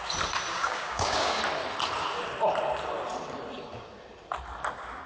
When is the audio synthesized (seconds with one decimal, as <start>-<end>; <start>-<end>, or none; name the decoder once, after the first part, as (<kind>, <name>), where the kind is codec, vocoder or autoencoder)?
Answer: 0.5-1.4 (codec, DAC)